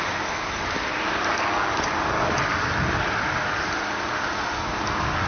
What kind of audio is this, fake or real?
real